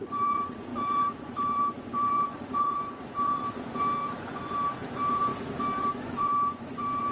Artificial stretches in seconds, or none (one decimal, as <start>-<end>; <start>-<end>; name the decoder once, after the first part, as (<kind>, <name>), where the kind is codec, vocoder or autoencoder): 0.0-5.3 (vocoder, Vocos); 5.8-7.1